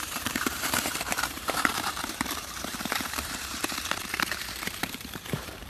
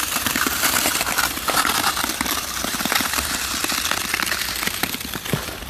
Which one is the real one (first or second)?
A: second